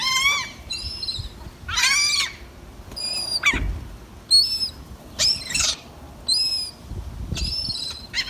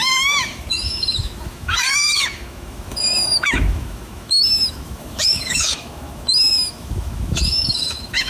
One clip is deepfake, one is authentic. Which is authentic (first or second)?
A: first